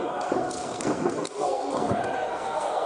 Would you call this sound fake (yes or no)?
yes